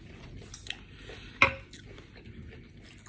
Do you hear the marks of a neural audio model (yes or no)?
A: no